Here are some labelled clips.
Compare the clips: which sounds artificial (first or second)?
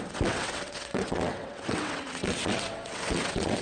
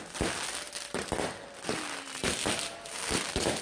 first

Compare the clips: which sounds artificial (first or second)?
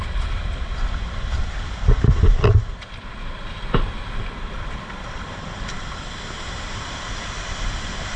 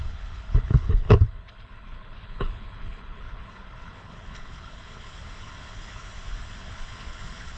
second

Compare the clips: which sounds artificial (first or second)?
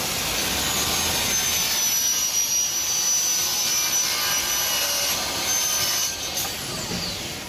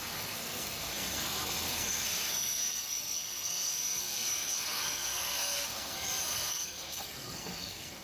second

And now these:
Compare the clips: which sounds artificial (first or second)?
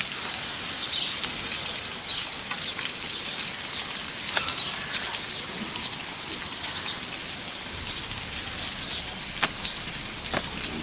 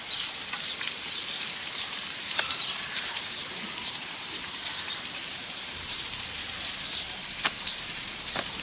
second